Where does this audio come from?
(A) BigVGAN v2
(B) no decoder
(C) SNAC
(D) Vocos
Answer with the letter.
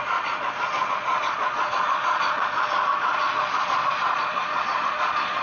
D